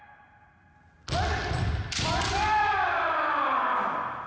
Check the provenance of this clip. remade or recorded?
recorded